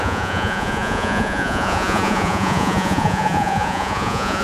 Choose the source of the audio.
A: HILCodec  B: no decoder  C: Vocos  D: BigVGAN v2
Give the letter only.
C